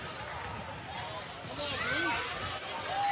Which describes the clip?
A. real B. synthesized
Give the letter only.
A